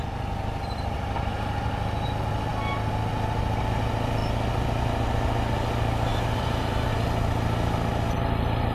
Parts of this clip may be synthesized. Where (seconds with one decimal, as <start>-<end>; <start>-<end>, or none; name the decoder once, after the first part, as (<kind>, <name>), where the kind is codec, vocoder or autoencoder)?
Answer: 6.1-6.9 (vocoder, BigVGAN v2)